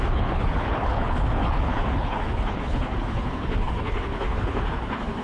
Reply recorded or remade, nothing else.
remade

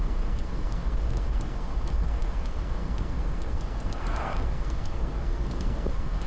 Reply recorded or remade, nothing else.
remade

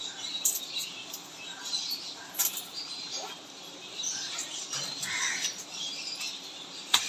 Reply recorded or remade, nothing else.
remade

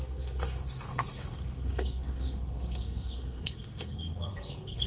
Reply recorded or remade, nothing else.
remade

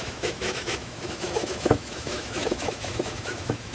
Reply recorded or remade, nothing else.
remade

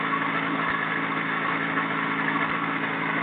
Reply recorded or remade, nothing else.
recorded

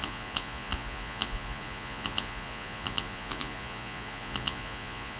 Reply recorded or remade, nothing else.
remade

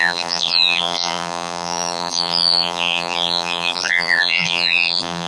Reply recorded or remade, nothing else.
remade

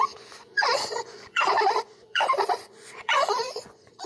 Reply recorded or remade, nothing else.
remade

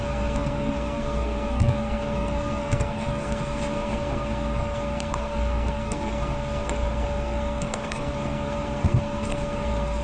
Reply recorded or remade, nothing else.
remade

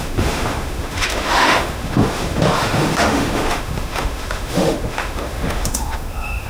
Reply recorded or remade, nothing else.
remade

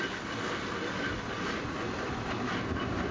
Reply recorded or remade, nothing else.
recorded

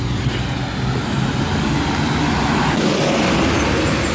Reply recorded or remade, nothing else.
recorded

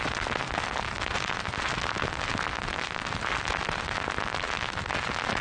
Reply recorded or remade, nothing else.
recorded